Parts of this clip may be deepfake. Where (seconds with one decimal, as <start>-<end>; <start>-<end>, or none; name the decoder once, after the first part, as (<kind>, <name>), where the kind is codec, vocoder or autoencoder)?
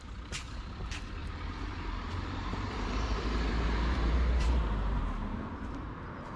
1.2-5.0 (vocoder, BigVGAN v2)